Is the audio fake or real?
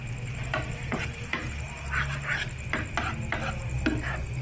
real